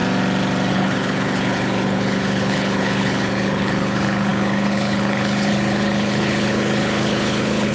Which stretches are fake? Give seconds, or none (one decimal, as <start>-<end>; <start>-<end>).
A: 0.7-7.7